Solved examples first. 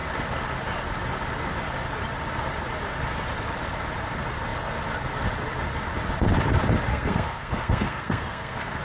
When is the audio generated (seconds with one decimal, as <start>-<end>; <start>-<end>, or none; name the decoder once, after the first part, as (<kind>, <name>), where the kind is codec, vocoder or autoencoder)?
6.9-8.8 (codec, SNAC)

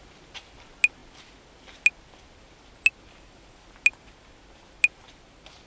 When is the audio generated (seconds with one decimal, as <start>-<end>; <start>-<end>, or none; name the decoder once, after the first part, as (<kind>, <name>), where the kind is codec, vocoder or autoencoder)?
none

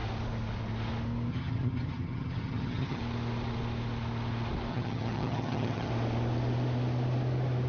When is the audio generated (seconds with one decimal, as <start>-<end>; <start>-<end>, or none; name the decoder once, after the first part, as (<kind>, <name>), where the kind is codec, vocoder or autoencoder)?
1.3-3.0 (vocoder, HiFi-GAN); 4.7-5.9